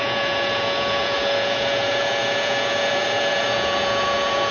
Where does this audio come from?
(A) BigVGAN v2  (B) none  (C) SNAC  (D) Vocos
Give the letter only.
D